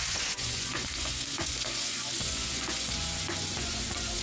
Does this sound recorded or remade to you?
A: remade